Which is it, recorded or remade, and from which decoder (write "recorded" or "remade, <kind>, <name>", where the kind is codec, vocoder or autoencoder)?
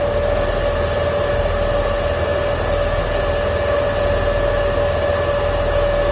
recorded